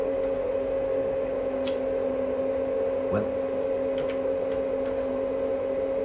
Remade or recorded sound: recorded